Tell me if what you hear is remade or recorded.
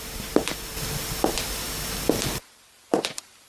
recorded